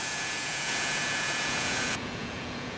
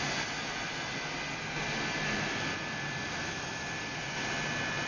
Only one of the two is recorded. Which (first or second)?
second